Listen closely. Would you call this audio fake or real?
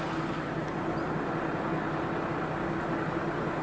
real